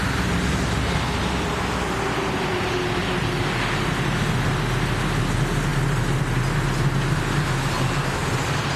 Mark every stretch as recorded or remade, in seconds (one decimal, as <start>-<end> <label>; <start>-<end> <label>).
0.0-3.0 recorded; 3.0-3.6 remade; 3.6-8.2 recorded; 8.2-8.8 remade